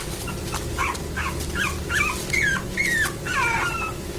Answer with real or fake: real